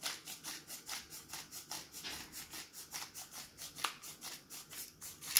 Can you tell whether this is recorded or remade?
recorded